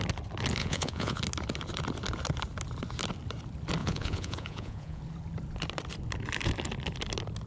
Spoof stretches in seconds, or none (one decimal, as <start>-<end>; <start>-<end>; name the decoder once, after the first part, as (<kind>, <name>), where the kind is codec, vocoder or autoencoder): 0.6-1.2 (vocoder, Vocos); 3.8-5.0